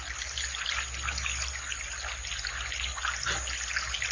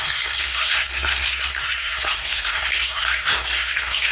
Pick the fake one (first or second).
second